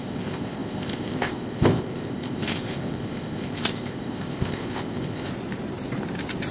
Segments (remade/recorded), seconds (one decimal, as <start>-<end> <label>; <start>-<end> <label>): 0.0-5.3 remade; 5.3-6.5 recorded